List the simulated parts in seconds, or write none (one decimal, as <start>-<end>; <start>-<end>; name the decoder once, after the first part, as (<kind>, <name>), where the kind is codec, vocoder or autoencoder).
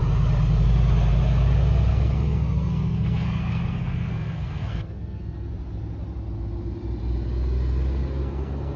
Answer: 1.9-5.5 (codec, SNAC); 8.2-8.8